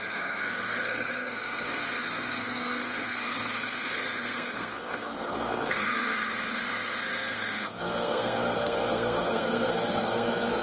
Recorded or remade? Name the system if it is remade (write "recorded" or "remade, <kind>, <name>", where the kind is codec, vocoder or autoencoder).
remade, codec, SNAC